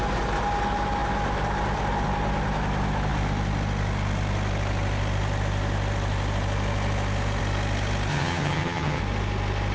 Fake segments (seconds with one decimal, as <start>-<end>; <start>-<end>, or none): 8.1-9.0

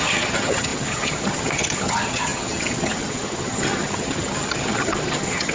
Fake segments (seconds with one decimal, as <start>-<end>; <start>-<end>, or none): 0.0-5.5

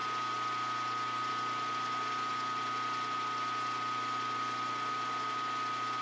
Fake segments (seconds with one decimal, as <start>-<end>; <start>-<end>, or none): none

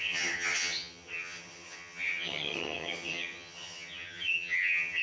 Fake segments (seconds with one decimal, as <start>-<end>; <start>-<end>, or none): 0.0-5.0